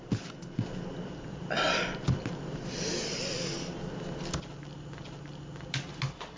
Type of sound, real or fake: real